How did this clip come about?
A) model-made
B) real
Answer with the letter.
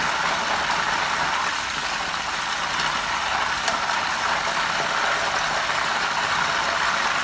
B